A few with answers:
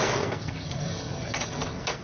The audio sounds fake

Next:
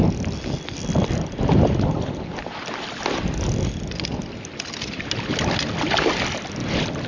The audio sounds real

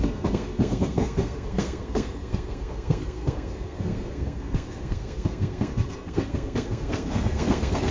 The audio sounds fake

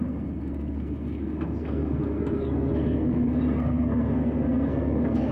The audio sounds fake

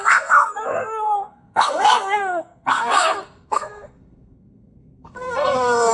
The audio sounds fake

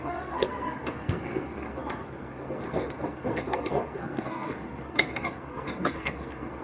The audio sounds fake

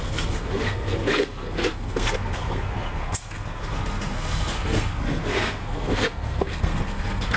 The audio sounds fake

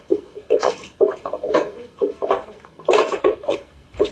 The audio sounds fake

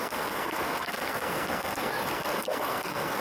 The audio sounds fake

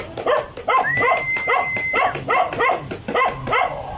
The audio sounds real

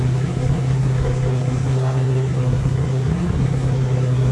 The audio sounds fake